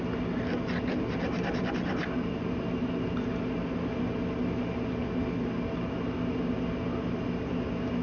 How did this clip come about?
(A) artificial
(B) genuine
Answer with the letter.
B